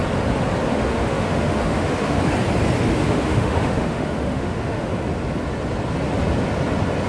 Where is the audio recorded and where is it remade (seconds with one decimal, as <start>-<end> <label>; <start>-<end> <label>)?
0.0-0.7 recorded; 0.7-2.2 remade; 2.2-2.9 recorded; 2.9-4.9 remade; 4.9-7.1 recorded